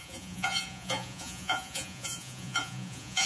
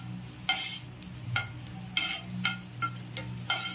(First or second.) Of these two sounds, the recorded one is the second